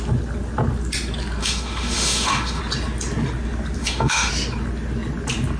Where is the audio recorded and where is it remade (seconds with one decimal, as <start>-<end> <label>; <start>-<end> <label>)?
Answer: 0.0-1.4 recorded; 1.4-2.6 remade; 2.6-3.8 recorded; 3.8-4.3 remade; 4.3-5.6 recorded